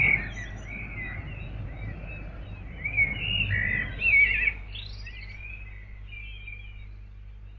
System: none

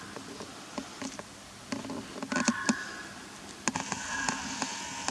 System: none